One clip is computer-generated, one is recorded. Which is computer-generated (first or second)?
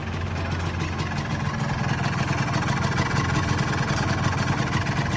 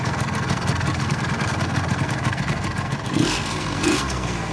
second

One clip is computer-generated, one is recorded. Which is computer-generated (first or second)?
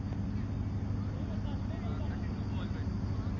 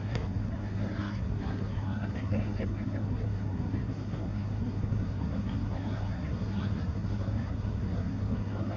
second